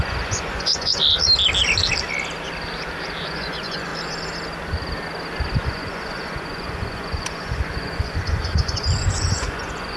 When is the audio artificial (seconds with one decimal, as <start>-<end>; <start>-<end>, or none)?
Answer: 0.0-1.0; 3.2-3.9; 5.6-10.0